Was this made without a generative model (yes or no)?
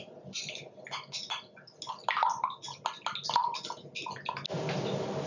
yes